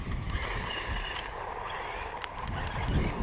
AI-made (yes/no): yes